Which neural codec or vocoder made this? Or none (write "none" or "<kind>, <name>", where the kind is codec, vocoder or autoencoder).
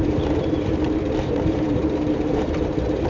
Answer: vocoder, BigVGAN v2